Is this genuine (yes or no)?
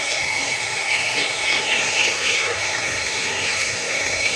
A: no